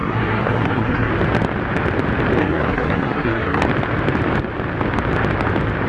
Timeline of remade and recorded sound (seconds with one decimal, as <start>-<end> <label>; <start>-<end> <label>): 0.0-1.1 remade; 1.1-2.4 recorded; 2.4-3.6 remade; 3.6-5.9 recorded